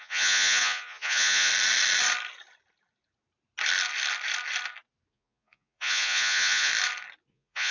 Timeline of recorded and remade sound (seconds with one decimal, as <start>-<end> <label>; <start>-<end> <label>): 0.0-1.5 remade; 1.5-5.1 recorded; 5.1-6.7 remade; 6.7-7.3 recorded; 7.3-7.7 remade